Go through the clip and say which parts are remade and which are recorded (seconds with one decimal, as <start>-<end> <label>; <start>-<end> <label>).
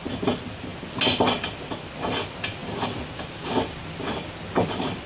0.0-5.1 recorded